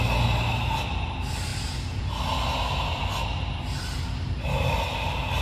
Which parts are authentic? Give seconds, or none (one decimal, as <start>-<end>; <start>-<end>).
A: 0.0-5.4